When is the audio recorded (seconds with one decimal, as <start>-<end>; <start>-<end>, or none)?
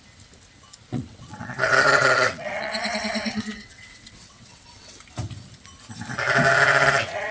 0.0-0.9; 5.0-6.7